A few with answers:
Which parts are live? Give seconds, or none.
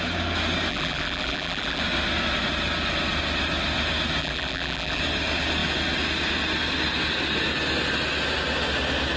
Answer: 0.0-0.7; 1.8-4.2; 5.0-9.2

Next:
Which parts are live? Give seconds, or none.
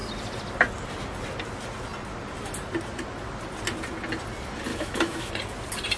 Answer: 0.0-4.7; 5.3-6.0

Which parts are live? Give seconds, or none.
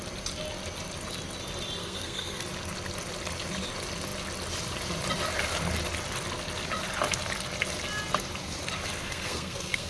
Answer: 0.0-1.8; 2.4-9.0